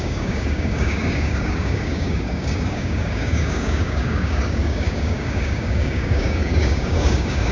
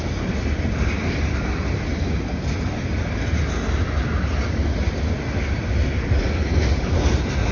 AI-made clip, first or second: first